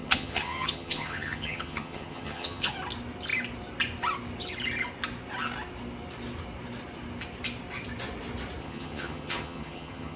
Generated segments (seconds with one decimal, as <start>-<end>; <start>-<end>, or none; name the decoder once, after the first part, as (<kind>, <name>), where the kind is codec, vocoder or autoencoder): 0.0-2.7 (vocoder, HiFi-GAN); 8.6-10.2